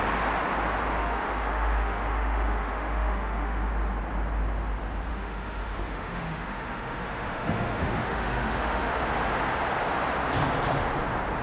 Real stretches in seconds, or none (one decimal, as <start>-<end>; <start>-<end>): 0.0-1.0; 3.7-5.1; 9.0-11.4